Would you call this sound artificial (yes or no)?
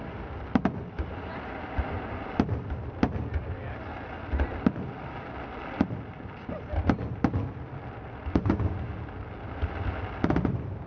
no